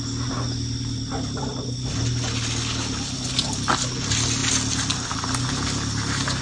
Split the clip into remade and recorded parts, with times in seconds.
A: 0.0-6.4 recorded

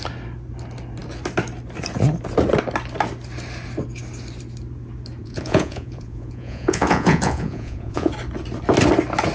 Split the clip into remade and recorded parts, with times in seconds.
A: 0.0-5.2 recorded; 5.2-8.1 remade; 8.1-9.3 recorded

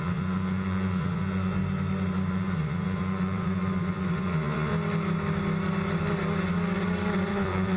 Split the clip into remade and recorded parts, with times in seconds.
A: 0.0-1.6 remade; 1.6-2.3 recorded; 2.3-4.7 remade; 4.7-7.3 recorded; 7.3-7.8 remade

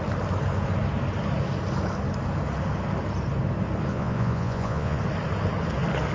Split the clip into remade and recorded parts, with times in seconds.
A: 0.0-3.9 recorded; 3.9-5.0 remade; 5.0-6.1 recorded

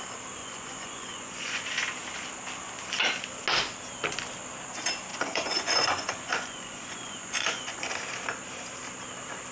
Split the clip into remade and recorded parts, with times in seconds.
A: 0.0-0.4 recorded; 0.4-1.6 remade; 1.6-5.1 recorded; 5.1-7.9 remade; 7.9-9.5 recorded

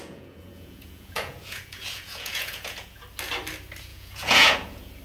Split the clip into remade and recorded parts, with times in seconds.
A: 0.0-3.0 remade; 3.0-3.9 recorded; 3.9-5.0 remade

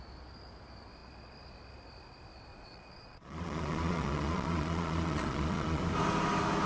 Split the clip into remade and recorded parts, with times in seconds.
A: 0.0-2.5 recorded; 2.5-5.8 remade; 5.8-6.7 recorded